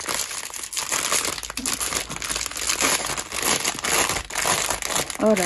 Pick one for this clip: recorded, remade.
recorded